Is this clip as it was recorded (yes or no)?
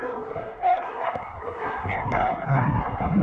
no